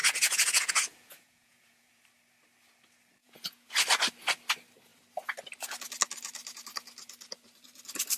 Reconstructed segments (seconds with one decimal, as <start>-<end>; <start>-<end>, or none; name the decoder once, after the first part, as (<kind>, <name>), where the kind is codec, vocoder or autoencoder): 0.0-2.0 (vocoder, Vocos); 3.2-3.7